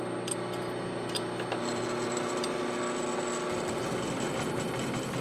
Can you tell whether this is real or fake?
real